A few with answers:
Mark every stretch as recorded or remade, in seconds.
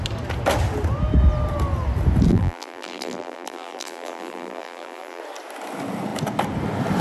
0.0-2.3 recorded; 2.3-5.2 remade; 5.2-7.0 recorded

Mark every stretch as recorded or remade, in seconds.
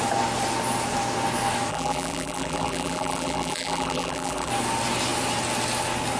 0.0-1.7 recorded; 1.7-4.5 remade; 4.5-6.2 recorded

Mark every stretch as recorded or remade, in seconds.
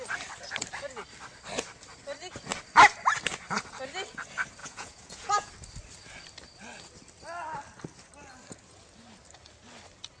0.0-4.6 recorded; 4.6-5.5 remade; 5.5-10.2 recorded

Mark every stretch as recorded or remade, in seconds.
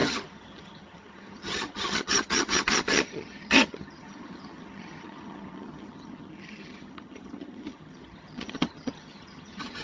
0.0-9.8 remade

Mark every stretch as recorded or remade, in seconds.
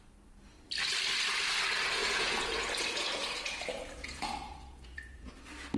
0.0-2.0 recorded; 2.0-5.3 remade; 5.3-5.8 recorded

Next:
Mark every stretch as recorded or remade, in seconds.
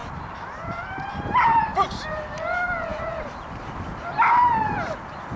0.0-1.6 remade; 1.6-2.9 recorded; 2.9-3.5 remade; 3.5-5.4 recorded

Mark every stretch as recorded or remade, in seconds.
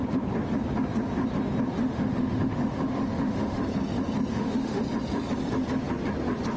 0.0-1.8 recorded; 1.8-3.6 remade; 3.6-4.3 recorded; 4.3-4.8 remade; 4.8-6.6 recorded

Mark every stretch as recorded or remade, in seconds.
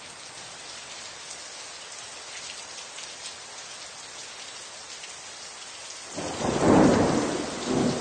0.0-8.0 recorded